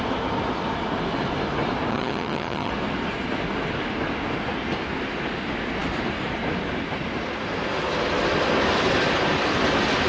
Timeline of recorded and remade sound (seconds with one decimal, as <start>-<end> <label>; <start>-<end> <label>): 0.0-1.9 recorded; 1.9-2.7 remade; 2.7-10.1 recorded